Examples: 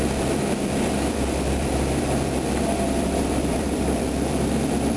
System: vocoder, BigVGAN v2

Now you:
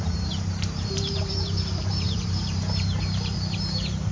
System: vocoder, BigVGAN v2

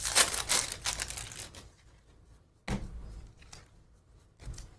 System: none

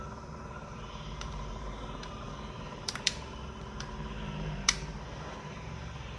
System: vocoder, BigVGAN v2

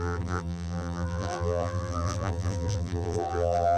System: vocoder, BigVGAN v2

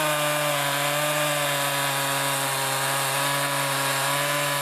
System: none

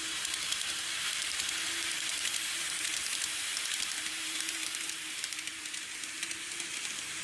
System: vocoder, BigVGAN v2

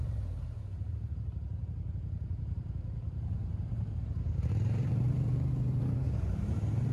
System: vocoder, BigVGAN v2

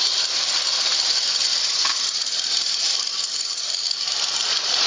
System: vocoder, BigVGAN v2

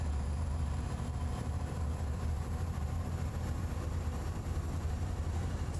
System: vocoder, BigVGAN v2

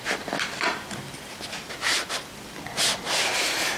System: none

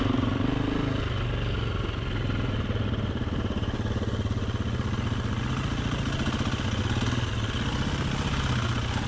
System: none